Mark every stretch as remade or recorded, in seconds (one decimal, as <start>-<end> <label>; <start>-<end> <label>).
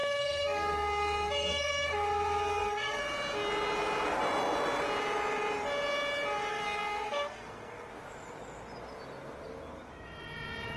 0.0-3.0 remade; 3.0-6.5 recorded; 6.5-7.9 remade; 7.9-10.8 recorded